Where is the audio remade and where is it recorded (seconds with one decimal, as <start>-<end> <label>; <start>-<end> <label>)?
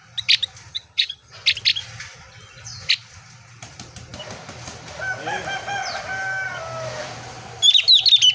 0.0-0.7 recorded; 0.7-1.3 remade; 1.3-8.3 recorded